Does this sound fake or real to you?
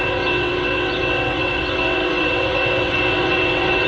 fake